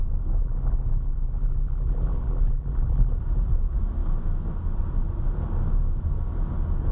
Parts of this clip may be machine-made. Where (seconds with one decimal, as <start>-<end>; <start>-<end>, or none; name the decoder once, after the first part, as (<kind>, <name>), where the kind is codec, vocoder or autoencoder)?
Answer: 0.4-3.1 (vocoder, BigVGAN v2)